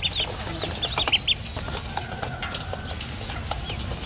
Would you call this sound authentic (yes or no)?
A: yes